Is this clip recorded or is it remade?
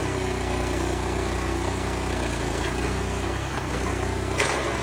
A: remade